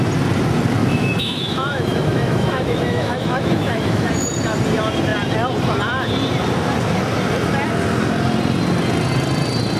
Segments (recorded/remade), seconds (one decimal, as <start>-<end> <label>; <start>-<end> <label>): 0.0-0.8 recorded; 0.8-4.1 remade; 4.1-9.8 recorded